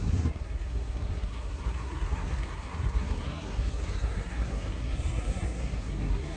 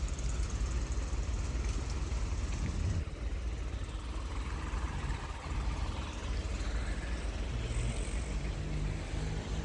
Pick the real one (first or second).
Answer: second